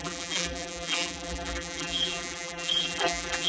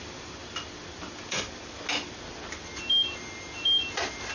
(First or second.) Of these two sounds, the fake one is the first